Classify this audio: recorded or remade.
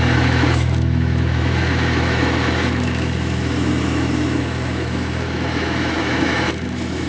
remade